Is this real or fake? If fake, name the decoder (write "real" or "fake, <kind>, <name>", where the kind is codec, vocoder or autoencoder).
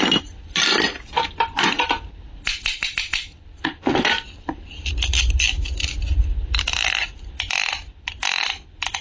real